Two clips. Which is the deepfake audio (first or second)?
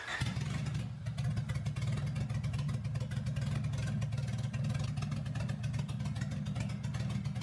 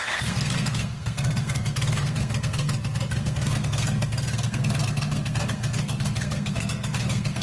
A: second